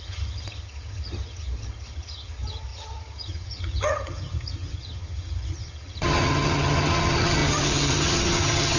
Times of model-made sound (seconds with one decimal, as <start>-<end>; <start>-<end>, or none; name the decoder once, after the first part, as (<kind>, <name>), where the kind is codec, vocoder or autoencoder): 0.0-8.8 (vocoder, HiFi-GAN)